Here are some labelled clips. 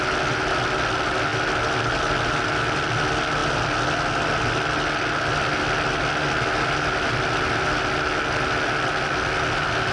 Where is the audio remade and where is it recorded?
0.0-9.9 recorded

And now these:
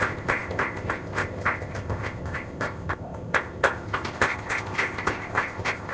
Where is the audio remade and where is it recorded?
0.0-5.9 remade

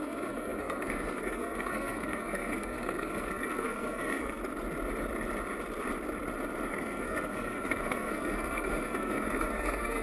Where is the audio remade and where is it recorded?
0.0-4.4 remade; 4.4-6.7 recorded; 6.7-10.0 remade

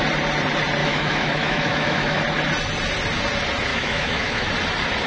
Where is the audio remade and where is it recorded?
0.0-0.8 recorded; 0.8-2.2 remade; 2.2-3.7 recorded; 3.7-4.5 remade; 4.5-5.1 recorded

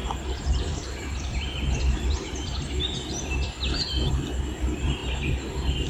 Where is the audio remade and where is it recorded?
0.0-5.0 remade; 5.0-5.5 recorded; 5.5-5.9 remade

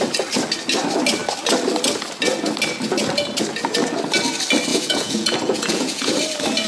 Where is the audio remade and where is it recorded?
0.0-4.7 recorded; 4.7-6.2 remade; 6.2-6.7 recorded

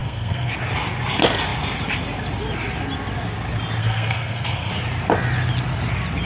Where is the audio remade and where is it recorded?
0.0-0.5 remade; 0.5-3.8 recorded; 3.8-4.7 remade; 4.7-6.3 recorded